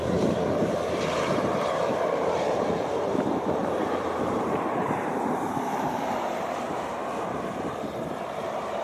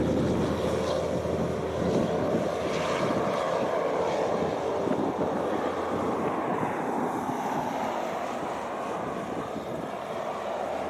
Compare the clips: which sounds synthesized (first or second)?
first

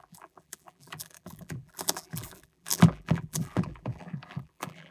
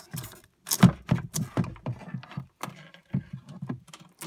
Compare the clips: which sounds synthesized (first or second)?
first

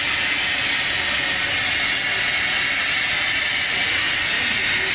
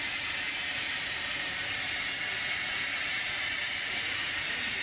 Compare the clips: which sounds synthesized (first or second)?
second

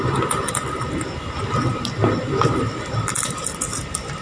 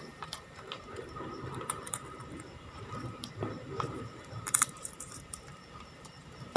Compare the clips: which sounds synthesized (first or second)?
second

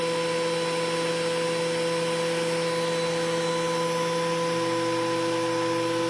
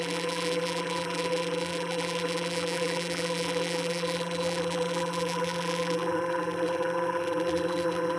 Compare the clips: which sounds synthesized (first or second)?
second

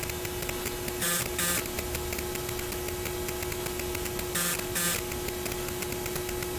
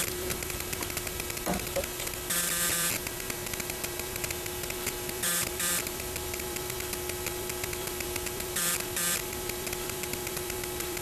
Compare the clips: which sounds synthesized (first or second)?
second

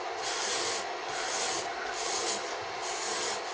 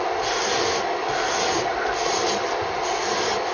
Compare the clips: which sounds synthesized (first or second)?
second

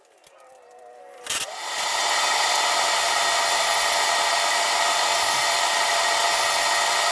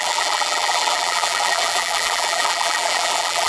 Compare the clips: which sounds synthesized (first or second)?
second